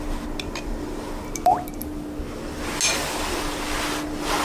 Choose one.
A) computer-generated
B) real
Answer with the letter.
B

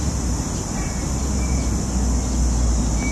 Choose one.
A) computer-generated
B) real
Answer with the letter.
B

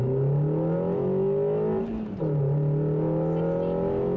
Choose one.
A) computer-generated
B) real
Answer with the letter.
B